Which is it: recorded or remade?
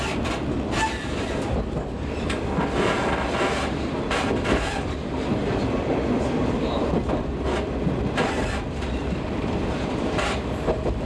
remade